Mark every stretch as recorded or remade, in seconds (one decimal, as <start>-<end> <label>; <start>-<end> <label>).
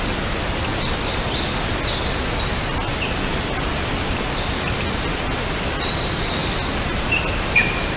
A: 0.0-8.0 recorded